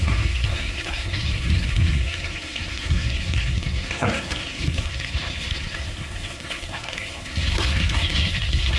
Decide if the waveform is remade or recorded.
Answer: remade